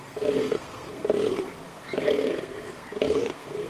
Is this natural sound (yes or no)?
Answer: no